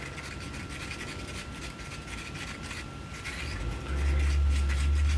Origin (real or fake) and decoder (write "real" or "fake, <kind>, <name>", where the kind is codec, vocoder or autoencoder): real